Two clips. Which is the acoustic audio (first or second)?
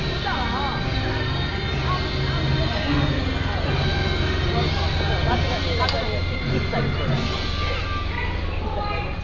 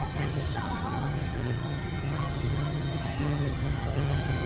first